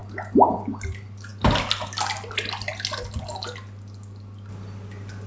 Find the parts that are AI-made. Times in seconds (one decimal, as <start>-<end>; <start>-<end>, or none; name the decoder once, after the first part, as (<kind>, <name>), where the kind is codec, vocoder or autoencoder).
0.0-0.6 (vocoder, BigVGAN v2)